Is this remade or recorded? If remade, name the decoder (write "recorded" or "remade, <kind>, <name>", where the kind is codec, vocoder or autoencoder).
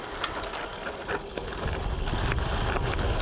recorded